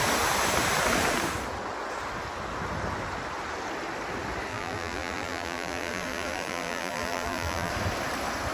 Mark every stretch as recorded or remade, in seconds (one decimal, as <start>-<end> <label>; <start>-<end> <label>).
0.0-4.5 recorded; 4.5-7.7 remade; 7.7-8.5 recorded